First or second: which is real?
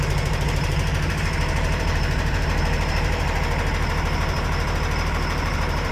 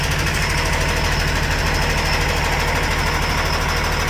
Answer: second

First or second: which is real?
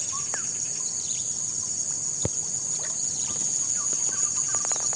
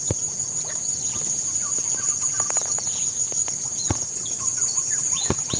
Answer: first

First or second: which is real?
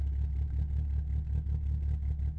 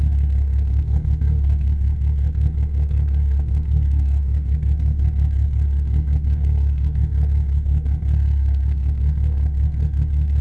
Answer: first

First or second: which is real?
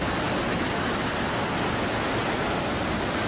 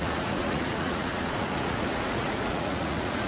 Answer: first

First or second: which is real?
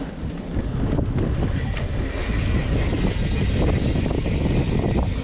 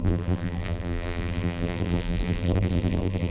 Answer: first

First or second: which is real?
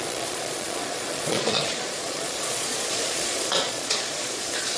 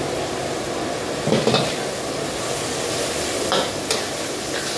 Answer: second